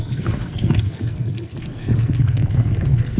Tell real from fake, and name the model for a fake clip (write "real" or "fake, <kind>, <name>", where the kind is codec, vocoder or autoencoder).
fake, codec, SNAC